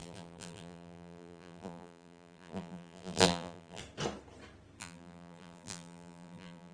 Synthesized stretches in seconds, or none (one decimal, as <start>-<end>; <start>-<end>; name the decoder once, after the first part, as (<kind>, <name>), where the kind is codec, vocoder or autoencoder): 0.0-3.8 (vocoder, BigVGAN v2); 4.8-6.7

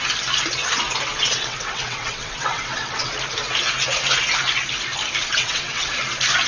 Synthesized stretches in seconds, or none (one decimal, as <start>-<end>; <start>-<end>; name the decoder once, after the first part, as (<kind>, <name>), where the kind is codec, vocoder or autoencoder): 1.1-3.1 (vocoder, WaveNeXt); 5.2-5.9

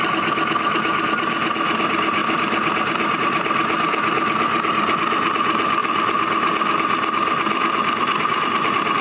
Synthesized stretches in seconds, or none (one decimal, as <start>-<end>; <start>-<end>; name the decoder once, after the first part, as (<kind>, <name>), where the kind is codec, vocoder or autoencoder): none